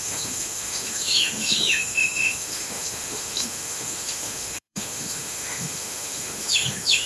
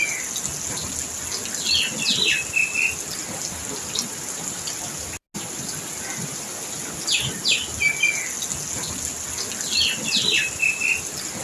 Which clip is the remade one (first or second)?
first